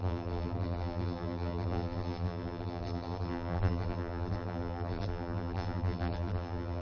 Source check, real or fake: fake